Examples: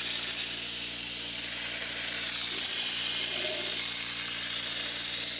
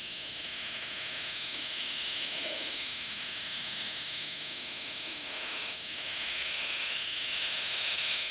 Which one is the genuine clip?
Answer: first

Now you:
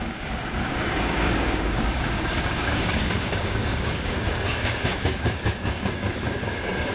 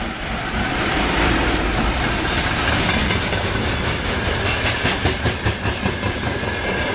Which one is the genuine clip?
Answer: second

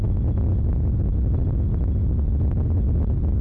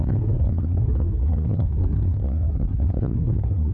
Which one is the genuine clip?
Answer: first